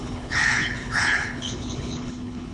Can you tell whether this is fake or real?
fake